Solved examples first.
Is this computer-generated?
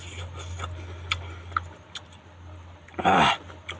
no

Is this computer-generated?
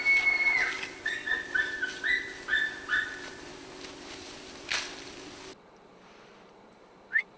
no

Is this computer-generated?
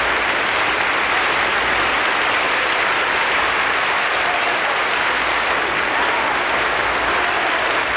no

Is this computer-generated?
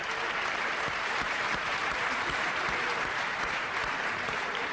yes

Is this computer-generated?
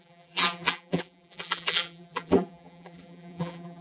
yes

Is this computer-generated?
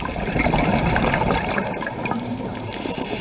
yes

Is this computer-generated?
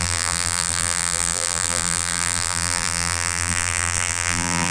yes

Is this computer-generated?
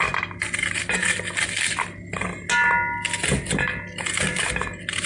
no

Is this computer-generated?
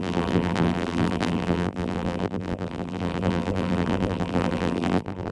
yes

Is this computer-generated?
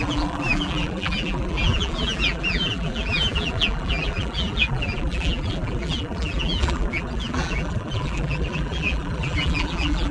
yes